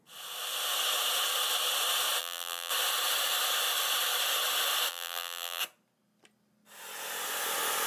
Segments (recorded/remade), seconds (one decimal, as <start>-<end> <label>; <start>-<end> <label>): 0.0-2.2 recorded; 2.2-2.7 remade; 2.7-4.9 recorded; 4.9-5.6 remade; 5.6-7.9 recorded